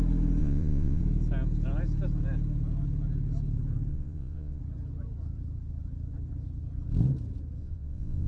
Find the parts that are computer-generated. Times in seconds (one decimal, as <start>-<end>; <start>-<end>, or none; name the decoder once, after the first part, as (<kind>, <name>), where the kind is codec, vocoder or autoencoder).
0.4-1.0 (vocoder, Vocos); 3.9-4.6; 7.6-8.3